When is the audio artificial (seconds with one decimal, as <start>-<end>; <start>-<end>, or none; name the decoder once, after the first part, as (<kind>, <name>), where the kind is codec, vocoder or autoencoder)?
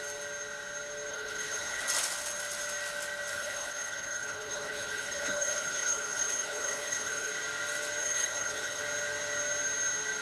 1.1-1.8 (codec, HILCodec); 3.3-7.3; 8.0-8.8